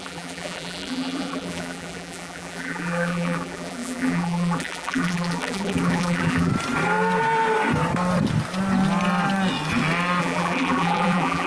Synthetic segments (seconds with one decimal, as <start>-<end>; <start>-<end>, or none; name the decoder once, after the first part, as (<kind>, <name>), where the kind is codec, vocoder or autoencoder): 0.0-6.5 (vocoder, BigVGAN v2); 10.2-11.5